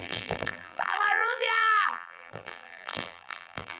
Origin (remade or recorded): remade